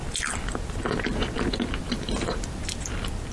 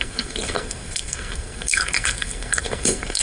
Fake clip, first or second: second